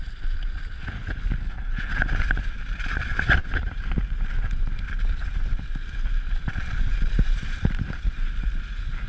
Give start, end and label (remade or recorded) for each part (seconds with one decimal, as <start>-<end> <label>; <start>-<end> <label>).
0.0-1.4 recorded; 1.4-1.9 remade; 1.9-9.1 recorded